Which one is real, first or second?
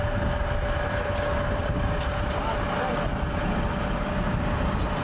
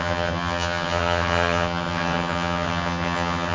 first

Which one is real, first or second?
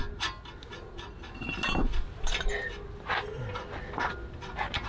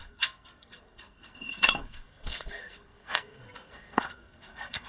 first